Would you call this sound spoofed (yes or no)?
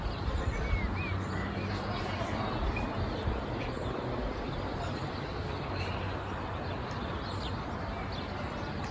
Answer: no